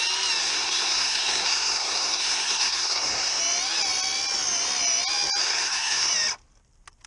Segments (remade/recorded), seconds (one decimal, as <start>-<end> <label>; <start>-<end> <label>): 0.0-0.4 recorded; 0.4-3.4 remade; 3.4-5.4 recorded; 5.4-6.1 remade; 6.1-7.1 recorded